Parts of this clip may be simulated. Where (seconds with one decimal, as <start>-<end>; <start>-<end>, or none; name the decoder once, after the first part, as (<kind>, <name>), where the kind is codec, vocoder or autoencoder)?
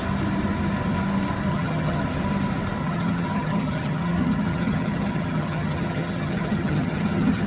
1.5-2.0 (vocoder, HiFi-GAN); 2.8-7.5